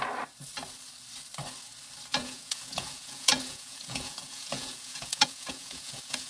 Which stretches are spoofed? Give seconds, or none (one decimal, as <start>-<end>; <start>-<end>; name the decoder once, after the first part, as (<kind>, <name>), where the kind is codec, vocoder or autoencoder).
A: 2.1-6.3 (vocoder, Vocos)